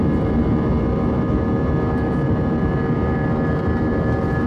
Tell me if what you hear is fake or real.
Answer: fake